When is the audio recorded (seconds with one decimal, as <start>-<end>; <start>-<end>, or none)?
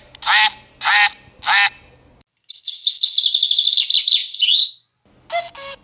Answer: 0.0-4.2; 5.0-5.8